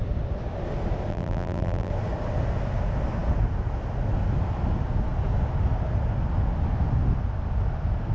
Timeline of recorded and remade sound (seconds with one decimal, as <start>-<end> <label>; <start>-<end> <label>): 0.0-1.1 recorded; 1.1-1.9 remade; 1.9-8.1 recorded